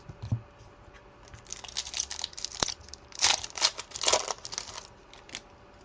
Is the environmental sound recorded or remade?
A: recorded